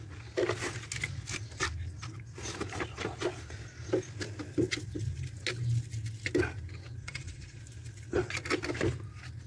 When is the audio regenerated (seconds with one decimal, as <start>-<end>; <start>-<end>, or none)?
7.0-7.6

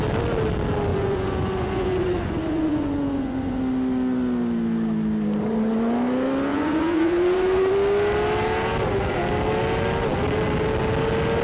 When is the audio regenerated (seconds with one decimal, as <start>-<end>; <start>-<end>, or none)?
0.9-3.6; 6.5-7.7

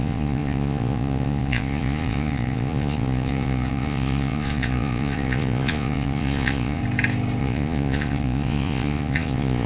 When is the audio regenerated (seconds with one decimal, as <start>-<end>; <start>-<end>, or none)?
0.0-6.8; 7.4-9.7